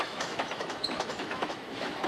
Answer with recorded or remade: remade